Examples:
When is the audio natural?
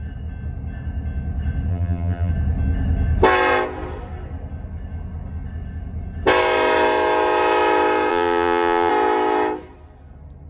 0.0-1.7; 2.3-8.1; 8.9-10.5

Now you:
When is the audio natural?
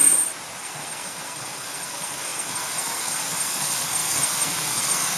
0.0-0.6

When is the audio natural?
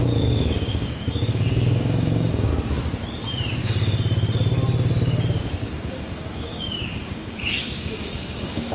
2.5-5.4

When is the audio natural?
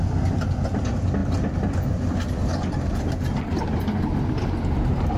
0.0-5.2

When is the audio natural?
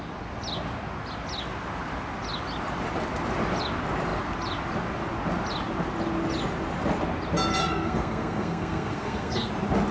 0.0-7.6; 9.5-9.9